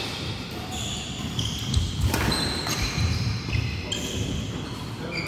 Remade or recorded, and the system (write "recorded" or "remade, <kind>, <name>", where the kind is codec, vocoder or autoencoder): recorded